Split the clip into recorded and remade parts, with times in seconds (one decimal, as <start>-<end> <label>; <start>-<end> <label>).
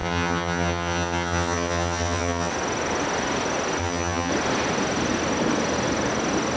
0.0-2.5 remade; 2.5-3.8 recorded; 3.8-4.3 remade; 4.3-6.6 recorded